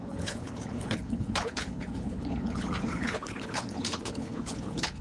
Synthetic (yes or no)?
yes